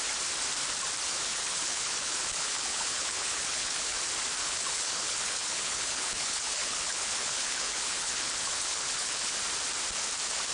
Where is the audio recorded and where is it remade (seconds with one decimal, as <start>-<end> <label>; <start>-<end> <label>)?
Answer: 0.0-1.3 recorded; 1.3-4.0 remade; 4.0-4.4 recorded; 4.4-9.4 remade; 9.4-10.5 recorded